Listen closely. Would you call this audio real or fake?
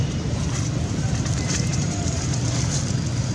real